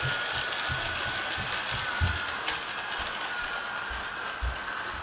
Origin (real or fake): real